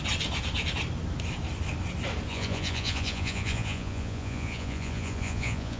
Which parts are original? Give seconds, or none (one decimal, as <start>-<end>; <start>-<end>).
0.0-2.3